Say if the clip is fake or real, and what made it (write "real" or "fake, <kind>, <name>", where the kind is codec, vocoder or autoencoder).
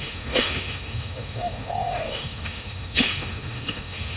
fake, autoencoder, DAC-VAE